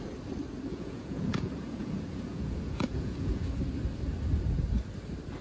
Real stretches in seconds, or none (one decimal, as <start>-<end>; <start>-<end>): 0.0-0.7; 3.6-5.4